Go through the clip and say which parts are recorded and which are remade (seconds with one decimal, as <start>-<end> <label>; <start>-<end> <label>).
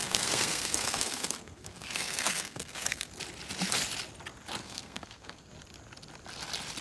0.0-3.1 remade; 3.1-4.6 recorded; 4.6-5.5 remade; 5.5-6.8 recorded